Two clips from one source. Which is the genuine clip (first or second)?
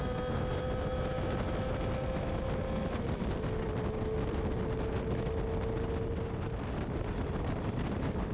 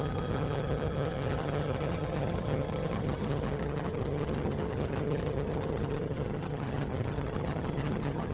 first